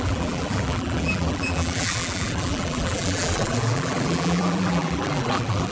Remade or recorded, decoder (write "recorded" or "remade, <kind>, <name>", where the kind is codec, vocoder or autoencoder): remade, vocoder, BigVGAN v2